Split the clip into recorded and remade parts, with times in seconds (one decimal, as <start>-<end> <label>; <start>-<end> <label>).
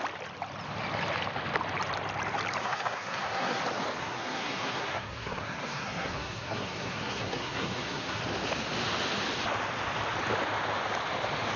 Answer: 0.0-2.6 recorded; 2.6-3.6 remade; 3.6-4.0 recorded; 4.0-8.2 remade; 8.2-11.6 recorded